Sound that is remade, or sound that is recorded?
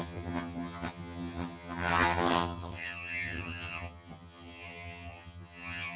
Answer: remade